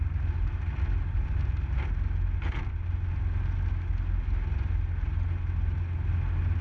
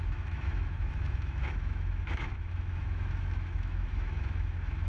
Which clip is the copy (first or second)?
second